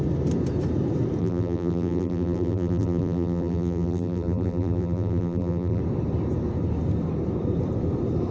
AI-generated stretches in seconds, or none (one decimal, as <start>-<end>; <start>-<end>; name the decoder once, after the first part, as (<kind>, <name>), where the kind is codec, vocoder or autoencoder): 1.2-5.8 (vocoder, BigVGAN v2)